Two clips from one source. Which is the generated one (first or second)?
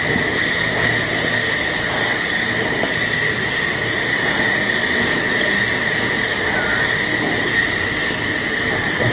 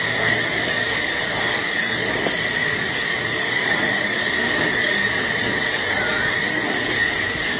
second